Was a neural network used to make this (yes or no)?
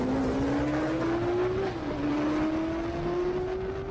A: no